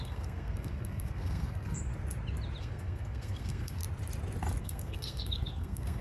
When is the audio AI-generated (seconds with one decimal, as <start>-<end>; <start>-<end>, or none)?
0.0-1.9; 2.6-3.8; 4.6-6.0